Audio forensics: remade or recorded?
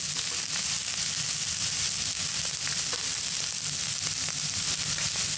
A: recorded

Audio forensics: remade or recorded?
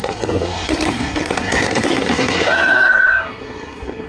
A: remade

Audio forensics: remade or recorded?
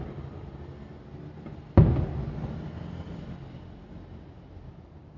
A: recorded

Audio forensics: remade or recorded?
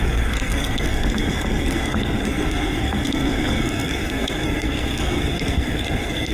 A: remade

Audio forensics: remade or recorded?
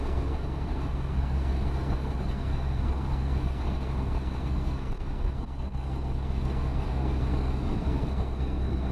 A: remade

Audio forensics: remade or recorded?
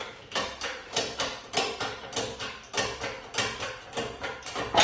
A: recorded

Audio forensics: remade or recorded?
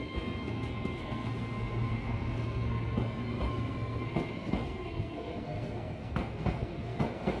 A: remade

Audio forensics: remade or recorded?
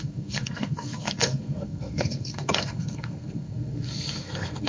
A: remade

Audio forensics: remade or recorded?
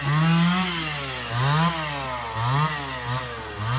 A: recorded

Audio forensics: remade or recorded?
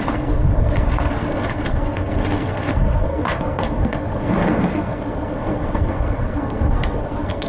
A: remade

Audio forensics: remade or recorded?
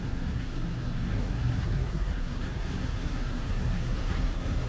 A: remade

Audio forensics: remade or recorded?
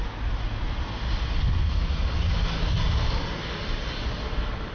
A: recorded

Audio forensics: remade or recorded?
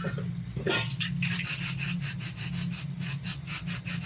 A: recorded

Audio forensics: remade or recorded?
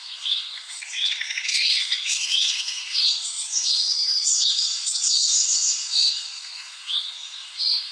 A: remade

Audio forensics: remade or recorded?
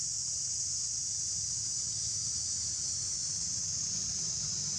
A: recorded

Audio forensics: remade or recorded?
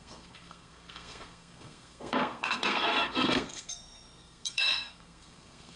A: remade